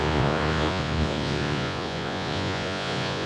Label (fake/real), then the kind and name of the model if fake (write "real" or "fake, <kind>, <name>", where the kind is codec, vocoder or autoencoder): fake, vocoder, Vocos